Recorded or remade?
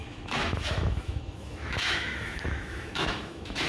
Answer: remade